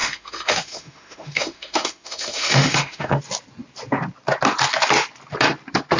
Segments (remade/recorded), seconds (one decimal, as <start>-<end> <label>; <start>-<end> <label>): 0.0-3.2 remade; 3.2-6.0 recorded